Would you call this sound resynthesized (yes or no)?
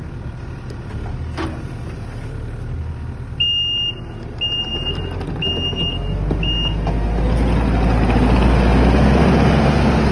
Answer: no